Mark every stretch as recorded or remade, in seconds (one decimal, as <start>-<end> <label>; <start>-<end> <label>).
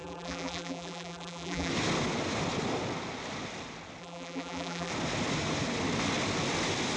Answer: 0.0-1.7 remade; 1.7-4.0 recorded; 4.0-4.9 remade; 4.9-7.0 recorded